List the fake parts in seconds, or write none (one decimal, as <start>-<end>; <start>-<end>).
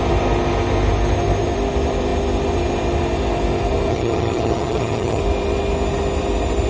3.9-5.2